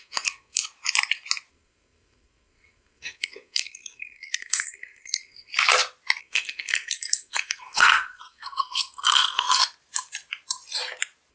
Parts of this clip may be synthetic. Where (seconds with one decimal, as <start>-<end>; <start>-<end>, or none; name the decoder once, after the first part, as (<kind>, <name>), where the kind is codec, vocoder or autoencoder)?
0.0-0.6 (codec, SNAC); 1.5-5.5; 6.2-9.6